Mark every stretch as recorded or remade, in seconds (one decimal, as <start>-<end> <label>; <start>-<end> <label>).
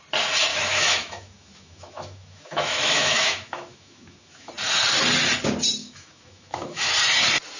0.0-0.5 recorded; 0.5-4.5 remade; 4.5-5.8 recorded; 5.8-6.8 remade; 6.8-7.6 recorded